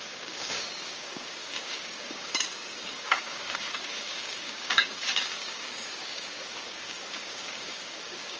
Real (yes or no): no